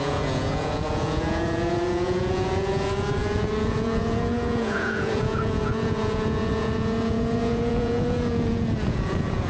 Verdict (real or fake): fake